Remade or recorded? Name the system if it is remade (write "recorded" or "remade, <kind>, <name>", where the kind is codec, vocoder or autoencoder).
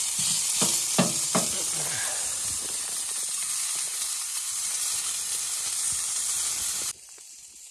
recorded